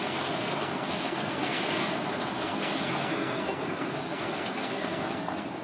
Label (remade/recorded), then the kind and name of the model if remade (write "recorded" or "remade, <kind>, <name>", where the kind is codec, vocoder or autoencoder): remade, codec, SNAC